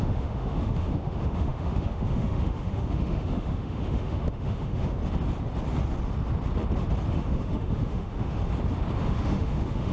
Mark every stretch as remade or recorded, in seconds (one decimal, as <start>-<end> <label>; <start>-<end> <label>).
0.0-5.0 remade; 5.0-7.1 recorded; 7.1-8.4 remade; 8.4-9.0 recorded; 9.0-9.9 remade